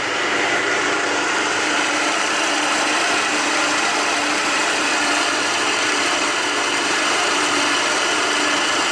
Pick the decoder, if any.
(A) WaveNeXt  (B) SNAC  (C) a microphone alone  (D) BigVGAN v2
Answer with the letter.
D